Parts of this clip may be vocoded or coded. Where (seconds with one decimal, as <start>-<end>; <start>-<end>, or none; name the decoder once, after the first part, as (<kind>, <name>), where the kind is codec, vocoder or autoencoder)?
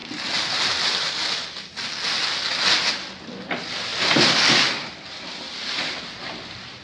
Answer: none